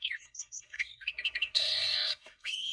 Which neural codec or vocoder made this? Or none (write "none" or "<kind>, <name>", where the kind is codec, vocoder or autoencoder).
codec, SNAC